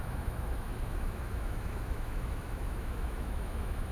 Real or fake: fake